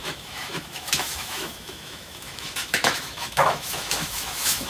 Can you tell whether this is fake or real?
fake